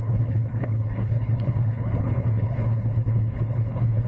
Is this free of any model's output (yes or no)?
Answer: no